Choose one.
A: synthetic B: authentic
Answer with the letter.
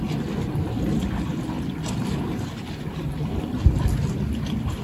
B